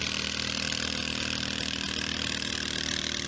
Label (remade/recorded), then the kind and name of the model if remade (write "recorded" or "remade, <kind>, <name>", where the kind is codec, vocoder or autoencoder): recorded